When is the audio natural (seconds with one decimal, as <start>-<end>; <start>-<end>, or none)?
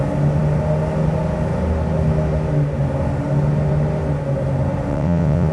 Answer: 0.0-4.9